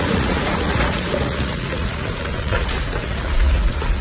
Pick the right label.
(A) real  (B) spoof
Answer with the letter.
B